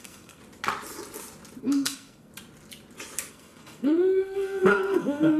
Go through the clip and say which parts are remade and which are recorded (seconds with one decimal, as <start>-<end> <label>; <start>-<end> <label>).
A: 0.0-0.4 remade; 0.4-1.6 recorded; 1.6-2.3 remade; 2.3-3.3 recorded; 3.3-5.4 remade